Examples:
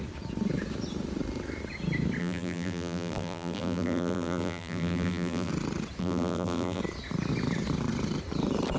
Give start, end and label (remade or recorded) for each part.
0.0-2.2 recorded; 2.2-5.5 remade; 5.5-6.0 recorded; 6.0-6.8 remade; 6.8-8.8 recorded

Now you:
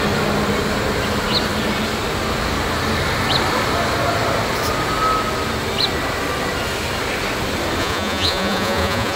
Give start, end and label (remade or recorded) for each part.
0.0-7.8 recorded; 7.8-9.2 remade

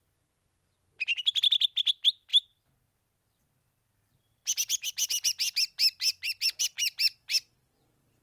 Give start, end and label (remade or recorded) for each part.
0.0-8.2 recorded

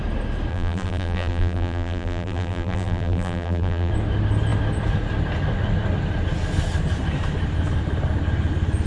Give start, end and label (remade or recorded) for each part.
0.0-0.5 recorded; 0.5-3.9 remade; 3.9-8.9 recorded

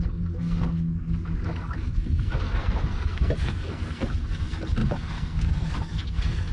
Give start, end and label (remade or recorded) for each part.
0.0-6.5 remade

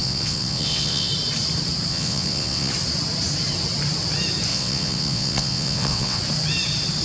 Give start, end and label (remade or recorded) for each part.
0.0-1.1 remade; 1.1-1.9 recorded; 1.9-2.7 remade; 2.7-4.5 recorded; 4.5-6.2 remade; 6.2-7.0 recorded